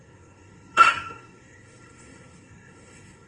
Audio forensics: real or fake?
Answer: fake